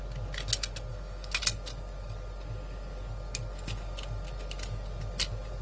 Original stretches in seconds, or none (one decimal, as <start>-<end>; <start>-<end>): 0.0-0.9; 1.4-5.6